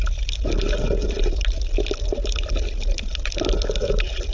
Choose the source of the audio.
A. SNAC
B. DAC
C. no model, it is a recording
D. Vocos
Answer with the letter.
C